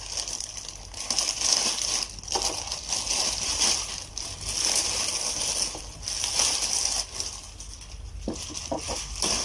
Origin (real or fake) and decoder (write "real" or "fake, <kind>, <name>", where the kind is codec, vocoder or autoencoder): real